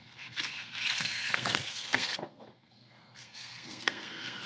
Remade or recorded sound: remade